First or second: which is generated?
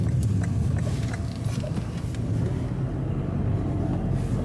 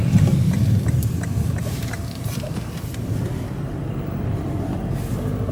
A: second